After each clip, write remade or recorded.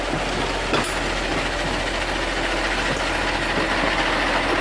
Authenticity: recorded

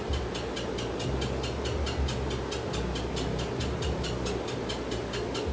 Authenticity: recorded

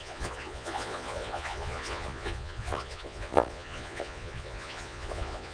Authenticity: remade